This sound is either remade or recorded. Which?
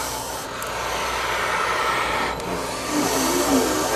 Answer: recorded